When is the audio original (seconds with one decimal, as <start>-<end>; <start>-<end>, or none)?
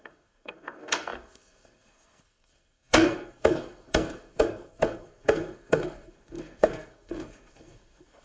none